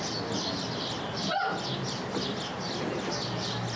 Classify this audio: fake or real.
real